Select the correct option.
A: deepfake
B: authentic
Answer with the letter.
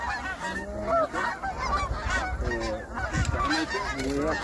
B